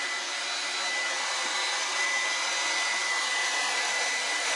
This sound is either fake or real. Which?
real